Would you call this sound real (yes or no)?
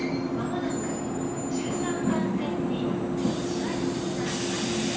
yes